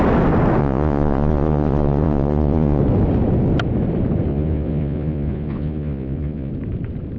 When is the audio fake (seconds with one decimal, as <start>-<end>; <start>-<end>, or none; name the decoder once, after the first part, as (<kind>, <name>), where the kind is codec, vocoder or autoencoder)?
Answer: 0.6-2.8 (vocoder, Vocos); 4.3-6.5